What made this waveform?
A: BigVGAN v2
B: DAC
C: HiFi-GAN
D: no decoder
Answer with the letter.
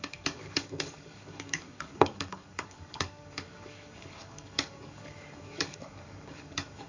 B